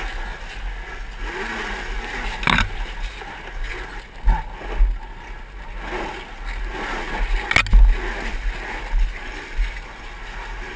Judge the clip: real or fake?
real